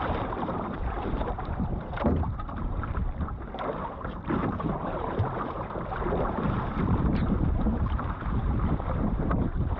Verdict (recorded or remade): remade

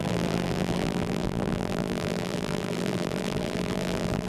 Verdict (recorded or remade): remade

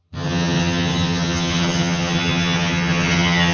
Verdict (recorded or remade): remade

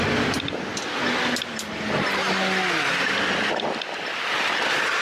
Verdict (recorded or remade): recorded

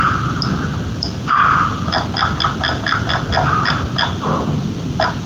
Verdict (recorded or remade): recorded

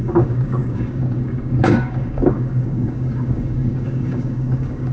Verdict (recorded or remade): remade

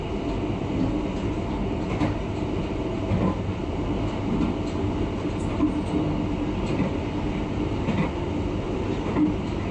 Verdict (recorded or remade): recorded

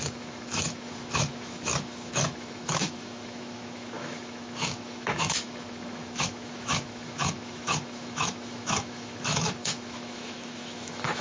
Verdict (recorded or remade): remade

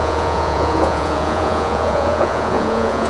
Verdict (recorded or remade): remade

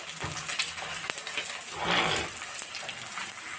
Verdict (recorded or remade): recorded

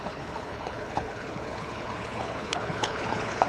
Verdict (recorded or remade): remade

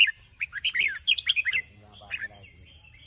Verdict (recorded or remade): recorded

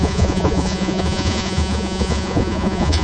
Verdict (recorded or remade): remade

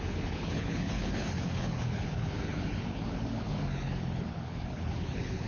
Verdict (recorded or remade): remade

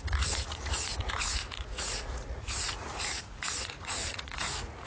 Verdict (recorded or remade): remade